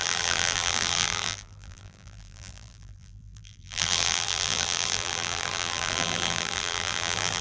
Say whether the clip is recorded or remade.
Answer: remade